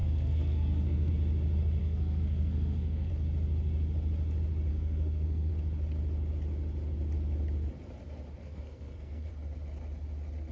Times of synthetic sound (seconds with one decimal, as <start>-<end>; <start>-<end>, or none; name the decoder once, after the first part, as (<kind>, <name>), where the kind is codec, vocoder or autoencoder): 0.0-1.1 (codec, SNAC); 1.8-3.1; 4.7-5.5; 8.4-9.3